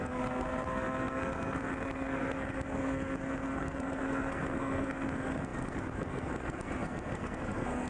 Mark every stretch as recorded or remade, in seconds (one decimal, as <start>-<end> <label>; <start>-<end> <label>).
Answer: 0.0-7.9 remade